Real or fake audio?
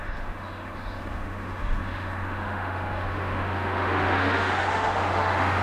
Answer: fake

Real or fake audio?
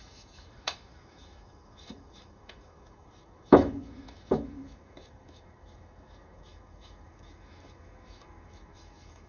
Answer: fake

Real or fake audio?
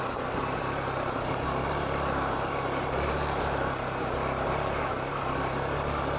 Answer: fake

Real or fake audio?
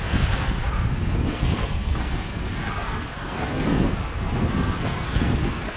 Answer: fake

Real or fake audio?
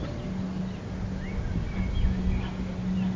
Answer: real